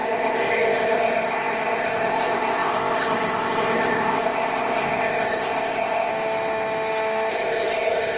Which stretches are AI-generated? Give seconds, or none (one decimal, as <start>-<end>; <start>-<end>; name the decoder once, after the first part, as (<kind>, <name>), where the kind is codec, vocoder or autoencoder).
0.0-6.1 (codec, ZipCodec); 7.3-8.2